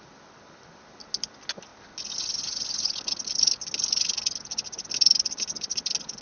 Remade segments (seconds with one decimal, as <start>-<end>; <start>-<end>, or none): none